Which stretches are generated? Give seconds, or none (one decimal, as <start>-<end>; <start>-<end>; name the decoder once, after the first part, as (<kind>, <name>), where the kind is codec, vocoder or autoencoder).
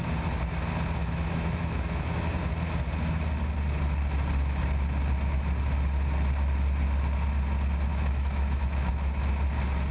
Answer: 1.0-2.0 (autoencoder, DAC-VAE); 7.9-8.9